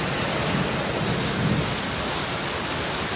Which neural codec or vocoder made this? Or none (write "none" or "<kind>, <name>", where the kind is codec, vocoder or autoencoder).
none